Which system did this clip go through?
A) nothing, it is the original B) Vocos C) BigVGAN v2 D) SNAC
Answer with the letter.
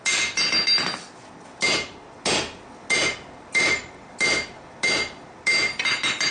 A